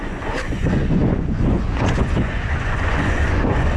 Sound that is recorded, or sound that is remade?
remade